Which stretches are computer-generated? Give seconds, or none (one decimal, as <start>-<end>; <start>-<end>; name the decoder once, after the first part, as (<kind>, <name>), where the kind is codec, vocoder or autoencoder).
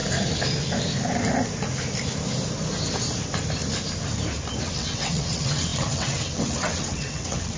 4.6-7.6 (vocoder, WaveNeXt)